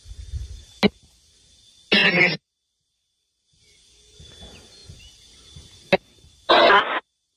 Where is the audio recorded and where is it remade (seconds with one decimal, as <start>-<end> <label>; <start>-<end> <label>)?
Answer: 0.0-7.4 recorded

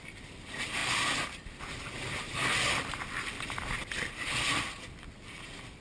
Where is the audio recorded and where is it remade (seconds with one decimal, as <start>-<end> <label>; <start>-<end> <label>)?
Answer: 0.0-5.8 recorded